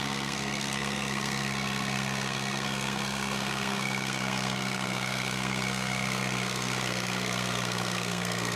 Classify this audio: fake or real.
fake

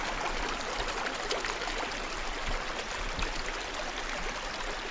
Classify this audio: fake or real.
real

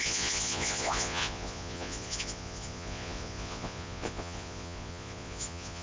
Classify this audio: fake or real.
fake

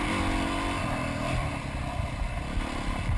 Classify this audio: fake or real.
real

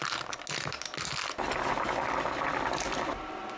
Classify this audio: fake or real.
real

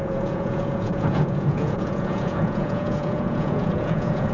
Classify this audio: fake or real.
fake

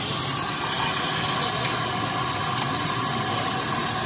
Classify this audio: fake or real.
real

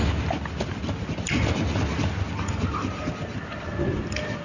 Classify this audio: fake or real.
real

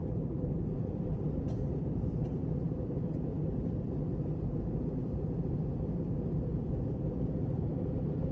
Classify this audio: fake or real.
fake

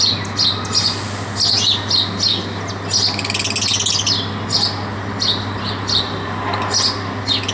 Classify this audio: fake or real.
real